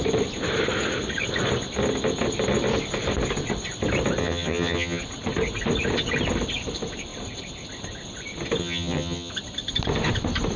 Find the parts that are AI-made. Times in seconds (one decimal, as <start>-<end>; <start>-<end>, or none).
4.2-5.0; 8.6-9.3